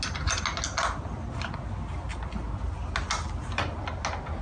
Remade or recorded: recorded